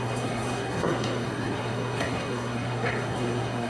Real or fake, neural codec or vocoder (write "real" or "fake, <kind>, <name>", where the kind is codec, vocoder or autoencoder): fake, codec, SNAC